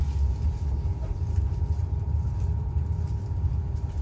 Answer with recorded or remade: remade